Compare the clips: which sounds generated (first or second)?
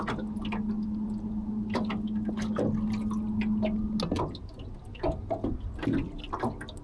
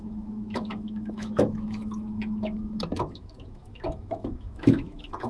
second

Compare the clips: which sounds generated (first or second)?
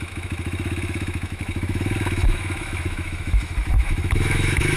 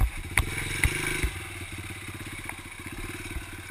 first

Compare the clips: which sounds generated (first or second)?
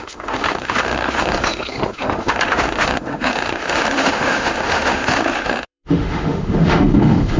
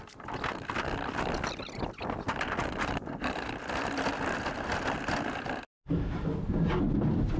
first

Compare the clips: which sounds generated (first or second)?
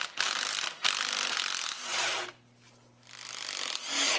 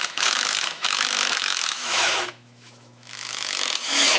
second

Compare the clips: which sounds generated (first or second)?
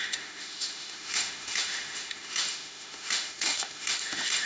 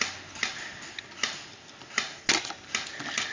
first